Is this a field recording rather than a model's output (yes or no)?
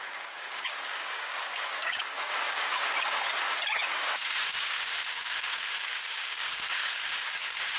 no